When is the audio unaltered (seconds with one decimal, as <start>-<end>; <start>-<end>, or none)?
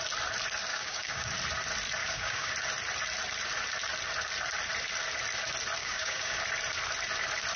0.0-0.7; 1.3-2.0; 2.5-5.8; 6.4-7.6